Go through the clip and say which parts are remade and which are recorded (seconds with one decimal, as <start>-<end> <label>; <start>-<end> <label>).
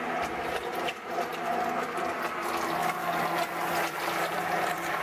0.0-1.3 remade; 1.3-4.3 recorded; 4.3-5.0 remade